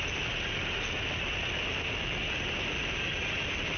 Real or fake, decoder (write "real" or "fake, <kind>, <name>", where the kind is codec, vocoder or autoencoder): real